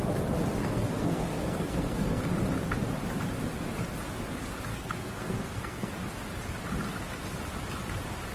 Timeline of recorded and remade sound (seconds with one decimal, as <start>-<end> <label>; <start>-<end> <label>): 0.0-0.6 recorded; 0.6-2.2 remade; 2.2-4.7 recorded; 4.7-5.9 remade; 5.9-8.3 recorded